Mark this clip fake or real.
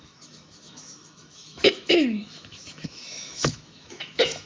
fake